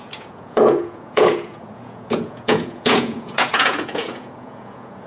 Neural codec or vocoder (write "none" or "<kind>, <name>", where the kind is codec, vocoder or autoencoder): vocoder, Vocos